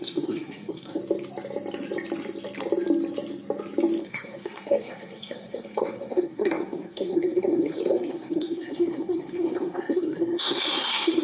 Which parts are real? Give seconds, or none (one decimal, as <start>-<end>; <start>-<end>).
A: 1.0-4.0